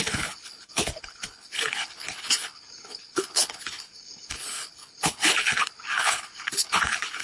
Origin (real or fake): fake